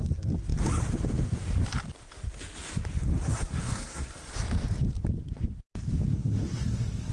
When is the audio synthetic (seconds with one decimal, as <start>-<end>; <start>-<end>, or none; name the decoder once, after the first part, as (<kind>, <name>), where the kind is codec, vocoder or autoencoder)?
3.1-4.3 (codec, SNAC); 6.1-7.1